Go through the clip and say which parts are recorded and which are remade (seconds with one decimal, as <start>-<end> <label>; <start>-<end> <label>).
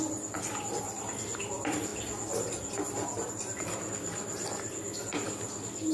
0.0-5.9 recorded